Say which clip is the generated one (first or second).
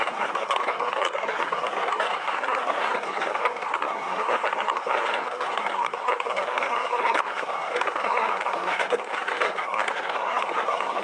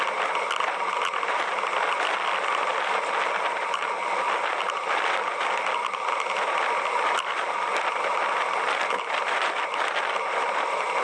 first